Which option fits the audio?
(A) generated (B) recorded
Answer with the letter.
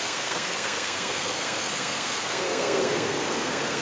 A